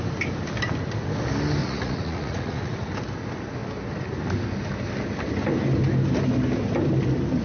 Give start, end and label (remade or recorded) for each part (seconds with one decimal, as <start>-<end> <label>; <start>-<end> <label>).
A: 0.0-1.6 recorded; 1.6-2.9 remade; 2.9-7.4 recorded